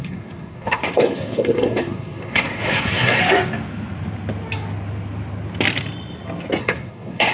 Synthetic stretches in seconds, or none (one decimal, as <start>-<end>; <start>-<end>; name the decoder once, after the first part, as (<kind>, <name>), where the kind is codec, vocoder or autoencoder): 0.0-3.2 (codec, SNAC); 6.6-7.3